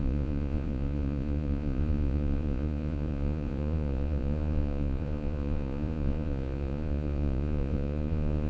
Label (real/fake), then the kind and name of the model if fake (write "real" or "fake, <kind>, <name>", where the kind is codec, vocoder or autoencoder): fake, vocoder, Vocos